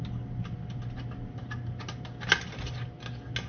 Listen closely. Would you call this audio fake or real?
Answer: real